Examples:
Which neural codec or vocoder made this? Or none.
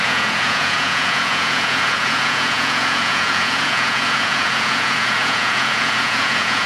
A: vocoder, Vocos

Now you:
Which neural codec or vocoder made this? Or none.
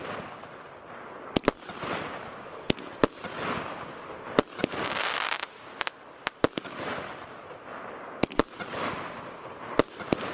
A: none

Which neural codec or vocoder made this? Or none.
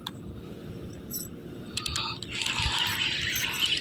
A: none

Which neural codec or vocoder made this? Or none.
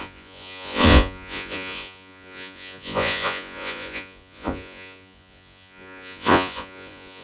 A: vocoder, Vocos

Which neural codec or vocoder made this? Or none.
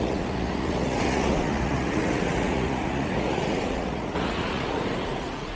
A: vocoder, Vocos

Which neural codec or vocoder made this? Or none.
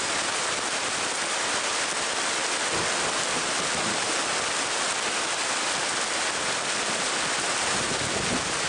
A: none